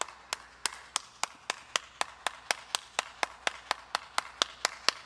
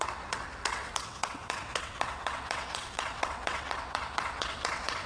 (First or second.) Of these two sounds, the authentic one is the first